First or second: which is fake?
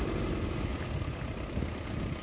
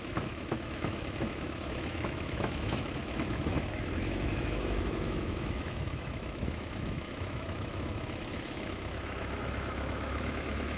second